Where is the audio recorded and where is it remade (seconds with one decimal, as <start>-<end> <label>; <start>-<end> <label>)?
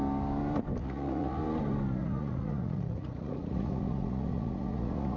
0.0-0.8 recorded; 0.8-1.4 remade; 1.4-2.0 recorded; 2.0-5.2 remade